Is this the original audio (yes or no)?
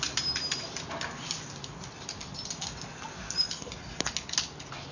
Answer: yes